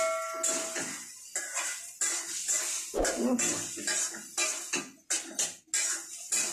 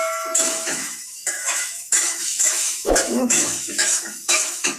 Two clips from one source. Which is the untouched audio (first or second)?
first